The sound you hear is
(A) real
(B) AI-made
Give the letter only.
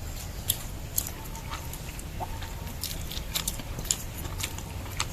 B